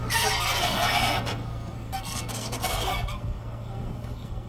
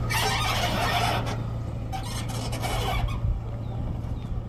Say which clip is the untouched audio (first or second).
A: second